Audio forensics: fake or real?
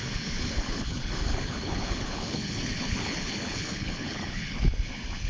fake